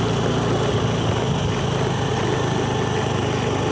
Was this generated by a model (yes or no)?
no